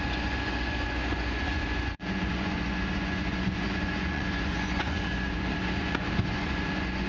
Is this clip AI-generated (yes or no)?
yes